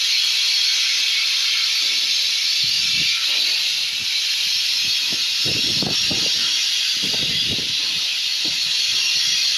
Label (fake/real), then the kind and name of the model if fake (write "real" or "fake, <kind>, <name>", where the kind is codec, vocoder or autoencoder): real